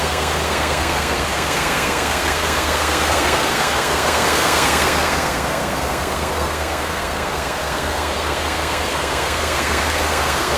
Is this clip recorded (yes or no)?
no